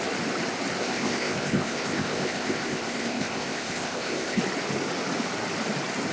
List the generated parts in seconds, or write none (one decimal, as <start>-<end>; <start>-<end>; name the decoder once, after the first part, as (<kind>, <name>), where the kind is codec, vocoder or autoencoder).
0.8-4.4 (codec, ZipCodec)